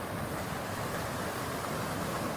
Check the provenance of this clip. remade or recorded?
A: remade